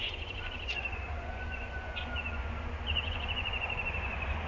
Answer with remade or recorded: remade